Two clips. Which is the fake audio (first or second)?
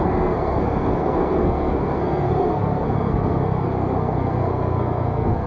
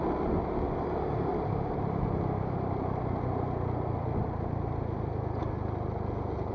first